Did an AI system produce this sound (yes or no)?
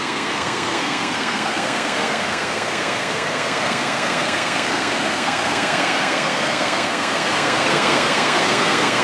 yes